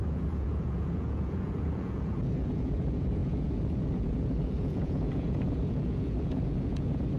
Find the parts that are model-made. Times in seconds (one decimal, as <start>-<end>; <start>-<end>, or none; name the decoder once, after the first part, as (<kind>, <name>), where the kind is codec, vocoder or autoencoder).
0.0-7.2 (vocoder, Vocos)